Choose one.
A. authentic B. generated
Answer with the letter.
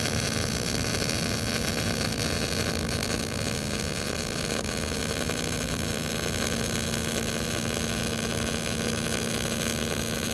A